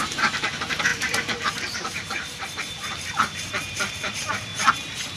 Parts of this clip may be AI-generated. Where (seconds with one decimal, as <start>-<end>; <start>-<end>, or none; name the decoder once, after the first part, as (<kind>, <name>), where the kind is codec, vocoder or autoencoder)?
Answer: 0.0-4.5 (vocoder, BigVGAN v2)